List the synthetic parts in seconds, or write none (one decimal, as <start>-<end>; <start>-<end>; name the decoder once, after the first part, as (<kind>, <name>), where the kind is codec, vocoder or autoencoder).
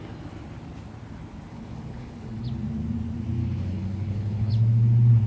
1.5-2.4 (codec, HILCodec); 3.4-4.5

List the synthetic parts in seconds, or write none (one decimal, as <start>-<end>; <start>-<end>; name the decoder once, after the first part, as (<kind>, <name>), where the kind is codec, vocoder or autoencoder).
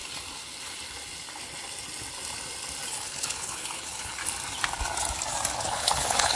2.9-4.2 (codec, HILCodec); 5.6-6.3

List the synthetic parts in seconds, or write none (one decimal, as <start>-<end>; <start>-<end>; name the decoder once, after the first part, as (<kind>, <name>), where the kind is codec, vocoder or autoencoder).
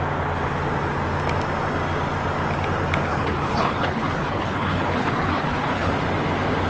3.1-5.9 (codec, HILCodec)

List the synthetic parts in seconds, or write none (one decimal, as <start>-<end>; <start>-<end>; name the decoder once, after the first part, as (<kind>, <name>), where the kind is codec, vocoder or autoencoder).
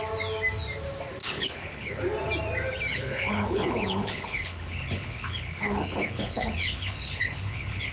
1.2-2.0 (codec, HILCodec); 2.9-7.9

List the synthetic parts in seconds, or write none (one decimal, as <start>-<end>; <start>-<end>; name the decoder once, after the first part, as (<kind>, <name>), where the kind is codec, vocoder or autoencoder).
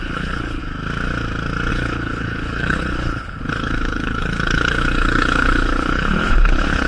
0.0-0.6 (codec, HILCodec); 1.7-6.9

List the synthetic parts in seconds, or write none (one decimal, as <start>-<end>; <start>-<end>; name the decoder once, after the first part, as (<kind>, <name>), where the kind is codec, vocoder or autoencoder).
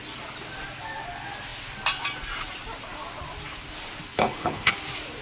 4.1-4.7 (codec, HILCodec)